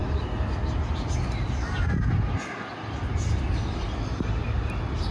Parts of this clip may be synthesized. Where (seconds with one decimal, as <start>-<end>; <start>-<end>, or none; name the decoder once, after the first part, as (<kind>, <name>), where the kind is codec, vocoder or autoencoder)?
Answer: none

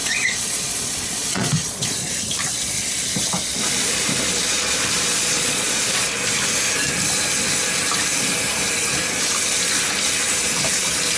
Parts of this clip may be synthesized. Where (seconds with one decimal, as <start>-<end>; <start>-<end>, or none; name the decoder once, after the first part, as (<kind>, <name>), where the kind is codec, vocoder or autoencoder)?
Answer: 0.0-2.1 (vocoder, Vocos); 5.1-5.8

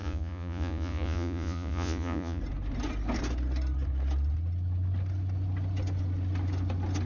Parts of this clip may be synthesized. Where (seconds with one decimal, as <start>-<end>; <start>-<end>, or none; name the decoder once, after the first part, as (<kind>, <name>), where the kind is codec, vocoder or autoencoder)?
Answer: 0.0-2.4 (vocoder, Vocos)

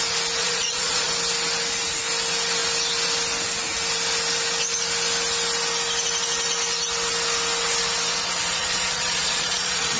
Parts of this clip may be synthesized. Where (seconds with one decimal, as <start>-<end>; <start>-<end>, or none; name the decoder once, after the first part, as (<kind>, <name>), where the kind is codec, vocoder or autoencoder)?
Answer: 0.4-1.1 (vocoder, Vocos); 8.6-10.0

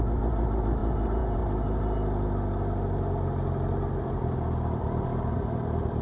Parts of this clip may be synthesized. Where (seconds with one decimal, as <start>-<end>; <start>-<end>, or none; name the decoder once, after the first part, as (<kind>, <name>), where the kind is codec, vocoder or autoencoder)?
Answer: none